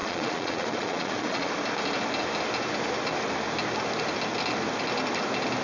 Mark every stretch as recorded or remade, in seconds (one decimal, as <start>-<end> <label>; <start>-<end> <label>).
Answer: 0.0-1.5 remade; 1.5-5.6 recorded